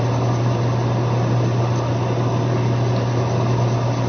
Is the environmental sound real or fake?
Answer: real